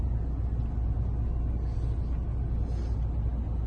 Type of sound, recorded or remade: recorded